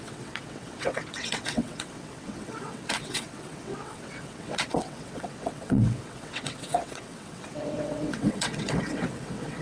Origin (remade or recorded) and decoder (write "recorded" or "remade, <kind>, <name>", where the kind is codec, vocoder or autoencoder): remade, vocoder, WaveNeXt